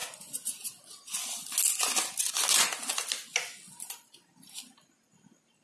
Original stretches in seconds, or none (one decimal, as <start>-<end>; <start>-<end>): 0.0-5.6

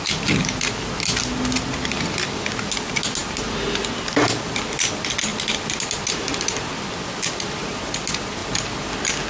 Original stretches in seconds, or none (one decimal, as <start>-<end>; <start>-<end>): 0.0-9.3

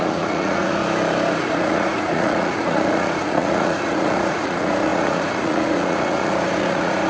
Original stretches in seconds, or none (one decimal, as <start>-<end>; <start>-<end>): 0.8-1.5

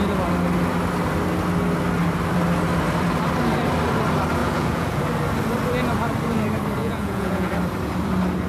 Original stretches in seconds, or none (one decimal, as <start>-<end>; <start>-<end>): 0.0-4.4; 5.0-6.8; 7.5-8.5

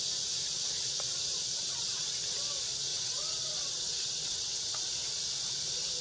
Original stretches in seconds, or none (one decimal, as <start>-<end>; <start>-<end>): 0.0-1.6; 2.4-2.9; 4.8-6.0

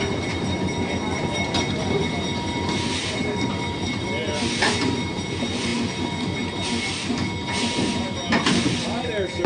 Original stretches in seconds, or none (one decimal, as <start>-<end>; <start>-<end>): 0.0-9.5

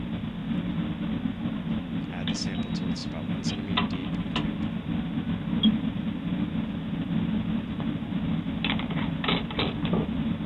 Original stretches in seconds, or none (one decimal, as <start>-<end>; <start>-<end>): 0.0-3.0; 3.5-10.5